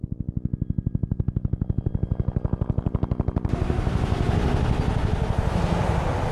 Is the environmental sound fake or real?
real